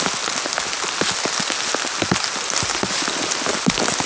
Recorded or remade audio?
recorded